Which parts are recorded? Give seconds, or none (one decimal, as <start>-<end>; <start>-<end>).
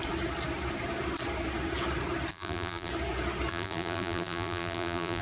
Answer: 0.0-2.3; 2.9-3.5